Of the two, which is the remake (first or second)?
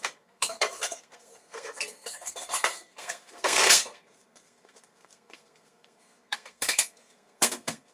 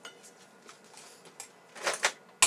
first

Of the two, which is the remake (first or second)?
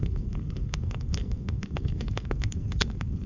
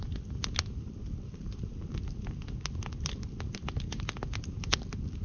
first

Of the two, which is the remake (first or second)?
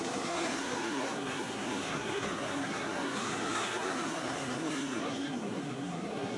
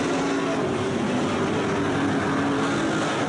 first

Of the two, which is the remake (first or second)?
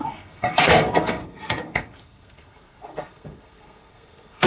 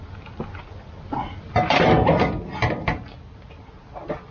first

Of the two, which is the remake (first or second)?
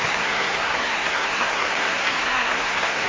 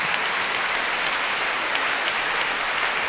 first